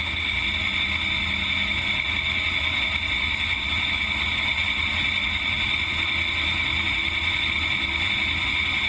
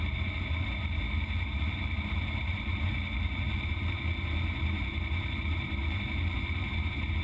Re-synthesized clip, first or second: second